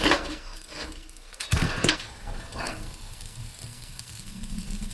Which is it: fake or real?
fake